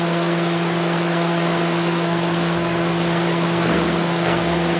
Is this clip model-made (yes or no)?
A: yes